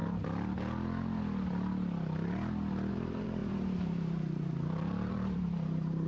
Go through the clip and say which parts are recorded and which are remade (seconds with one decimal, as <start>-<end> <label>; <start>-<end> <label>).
0.0-2.9 recorded; 2.9-6.1 remade